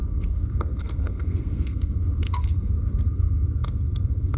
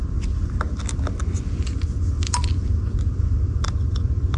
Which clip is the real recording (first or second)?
second